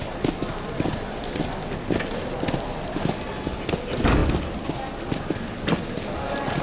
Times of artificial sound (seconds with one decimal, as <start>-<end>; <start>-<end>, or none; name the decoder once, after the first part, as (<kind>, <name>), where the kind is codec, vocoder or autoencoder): none